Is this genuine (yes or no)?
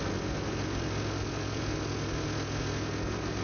yes